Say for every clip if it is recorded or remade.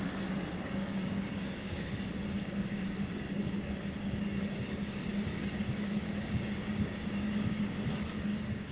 remade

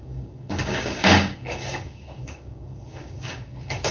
remade